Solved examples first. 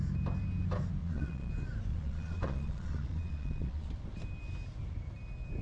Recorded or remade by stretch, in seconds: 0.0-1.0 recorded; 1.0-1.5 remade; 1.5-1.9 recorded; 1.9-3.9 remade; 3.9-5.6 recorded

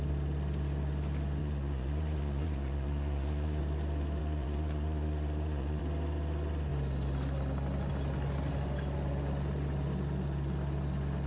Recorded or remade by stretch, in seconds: 0.0-1.4 recorded; 1.4-3.6 remade; 3.6-4.2 recorded; 4.2-5.8 remade; 5.8-11.3 recorded